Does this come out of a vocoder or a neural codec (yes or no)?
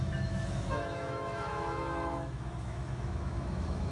yes